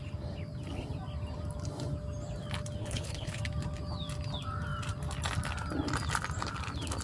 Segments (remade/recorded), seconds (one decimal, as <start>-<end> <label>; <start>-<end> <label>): 0.0-2.8 recorded; 2.8-3.4 remade; 3.4-7.0 recorded